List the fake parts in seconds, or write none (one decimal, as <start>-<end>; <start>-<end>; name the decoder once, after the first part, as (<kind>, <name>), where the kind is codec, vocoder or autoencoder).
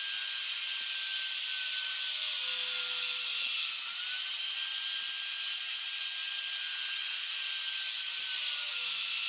none